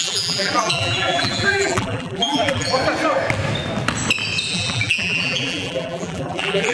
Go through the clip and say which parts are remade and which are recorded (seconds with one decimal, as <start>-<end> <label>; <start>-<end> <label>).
0.0-2.8 remade; 2.8-4.5 recorded; 4.5-6.7 remade